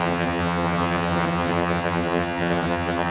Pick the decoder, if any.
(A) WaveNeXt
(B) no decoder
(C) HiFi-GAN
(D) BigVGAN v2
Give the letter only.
C